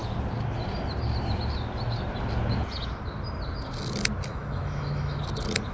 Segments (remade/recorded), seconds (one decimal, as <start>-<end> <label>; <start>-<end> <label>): 0.0-4.3 recorded; 4.3-5.2 remade; 5.2-5.7 recorded